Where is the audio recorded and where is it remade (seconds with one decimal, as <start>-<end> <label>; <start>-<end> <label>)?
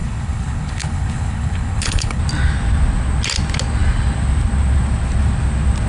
0.0-2.2 remade; 2.2-5.9 recorded